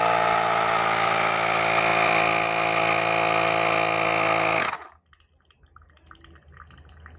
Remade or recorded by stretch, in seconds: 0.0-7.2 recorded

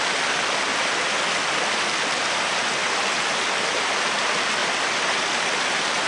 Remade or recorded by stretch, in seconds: 0.0-0.7 recorded; 0.7-1.3 remade; 1.3-4.6 recorded; 4.6-6.1 remade